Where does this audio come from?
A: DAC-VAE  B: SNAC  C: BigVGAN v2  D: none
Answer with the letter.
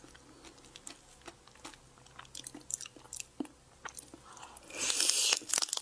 D